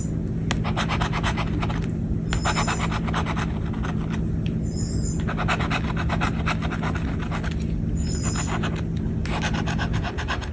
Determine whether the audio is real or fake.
real